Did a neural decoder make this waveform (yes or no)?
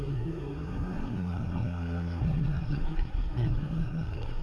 yes